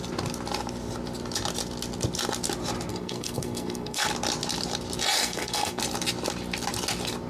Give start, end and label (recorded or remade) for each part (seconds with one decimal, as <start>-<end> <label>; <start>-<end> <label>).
0.0-2.9 recorded; 2.9-4.1 remade; 4.1-5.2 recorded; 5.2-5.8 remade; 5.8-7.3 recorded